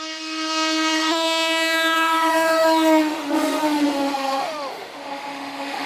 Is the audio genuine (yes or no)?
no